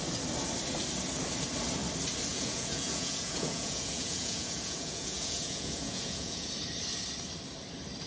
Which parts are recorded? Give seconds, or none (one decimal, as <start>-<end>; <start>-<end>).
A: 0.0-2.3; 6.5-8.1